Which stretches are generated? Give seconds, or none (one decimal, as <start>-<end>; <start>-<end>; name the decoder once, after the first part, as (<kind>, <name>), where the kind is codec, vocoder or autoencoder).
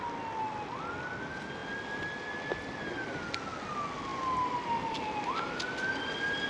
none